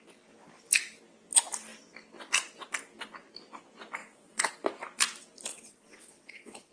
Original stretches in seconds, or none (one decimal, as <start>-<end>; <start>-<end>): 0.0-4.0; 4.5-5.5